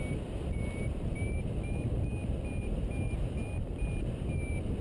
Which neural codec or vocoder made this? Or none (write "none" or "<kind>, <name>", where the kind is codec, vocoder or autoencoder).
none